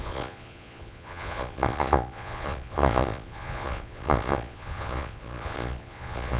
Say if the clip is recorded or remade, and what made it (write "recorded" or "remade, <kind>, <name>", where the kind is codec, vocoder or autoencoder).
remade, vocoder, Vocos